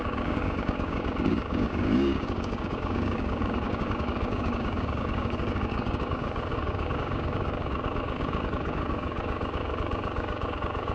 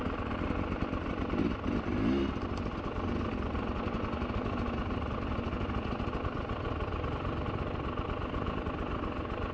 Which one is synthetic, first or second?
first